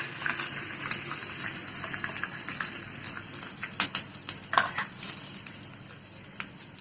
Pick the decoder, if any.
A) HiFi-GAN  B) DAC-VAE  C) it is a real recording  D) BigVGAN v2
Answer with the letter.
C